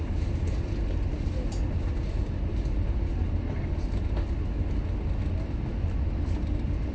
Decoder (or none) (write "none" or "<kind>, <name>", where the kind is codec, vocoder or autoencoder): none